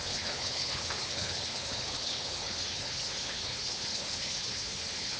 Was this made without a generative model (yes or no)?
no